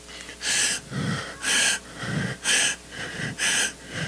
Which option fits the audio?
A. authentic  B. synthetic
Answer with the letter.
A